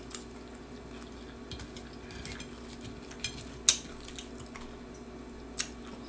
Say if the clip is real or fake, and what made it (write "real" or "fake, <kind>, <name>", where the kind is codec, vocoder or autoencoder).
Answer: real